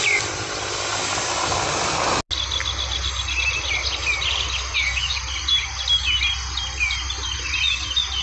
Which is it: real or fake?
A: real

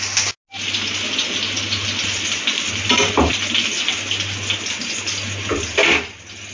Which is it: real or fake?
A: real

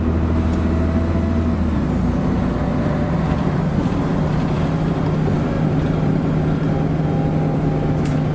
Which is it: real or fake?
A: real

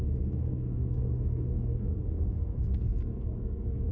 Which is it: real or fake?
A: fake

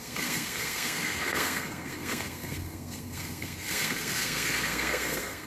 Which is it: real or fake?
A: fake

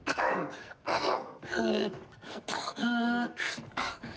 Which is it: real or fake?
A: fake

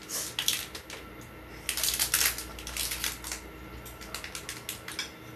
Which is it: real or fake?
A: real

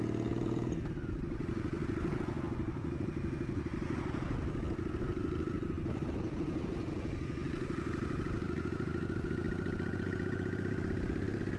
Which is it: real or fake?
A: real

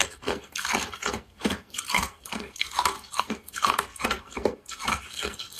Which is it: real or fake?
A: fake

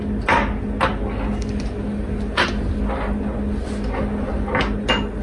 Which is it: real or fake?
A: real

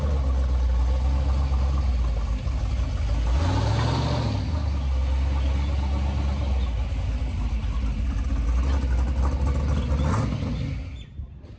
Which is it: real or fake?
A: real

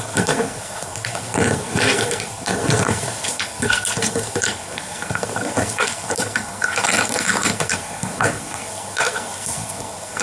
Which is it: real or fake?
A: fake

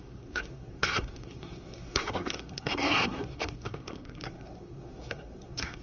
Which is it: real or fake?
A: fake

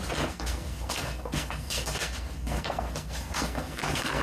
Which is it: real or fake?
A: fake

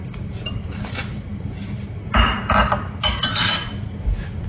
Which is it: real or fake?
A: real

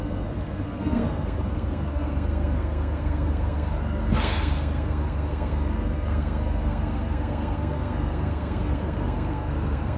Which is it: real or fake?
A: fake